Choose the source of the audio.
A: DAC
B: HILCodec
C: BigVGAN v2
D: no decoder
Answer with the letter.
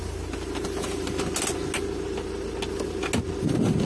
D